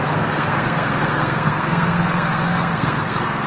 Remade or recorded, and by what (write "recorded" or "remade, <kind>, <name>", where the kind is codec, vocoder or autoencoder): remade, codec, SNAC